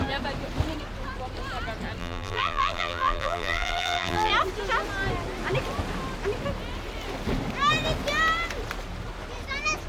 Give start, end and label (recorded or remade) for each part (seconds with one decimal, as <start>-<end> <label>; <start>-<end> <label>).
0.0-2.0 recorded; 2.0-4.3 remade; 4.3-9.9 recorded